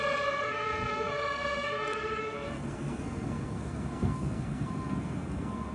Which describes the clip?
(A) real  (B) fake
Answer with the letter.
B